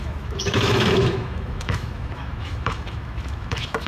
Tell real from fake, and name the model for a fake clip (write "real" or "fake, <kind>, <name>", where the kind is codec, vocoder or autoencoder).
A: fake, autoencoder, DAC-VAE